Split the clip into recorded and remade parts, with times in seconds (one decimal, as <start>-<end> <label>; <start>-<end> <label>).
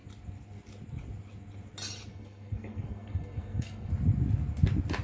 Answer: 0.0-2.1 recorded; 2.1-3.9 remade; 3.9-5.0 recorded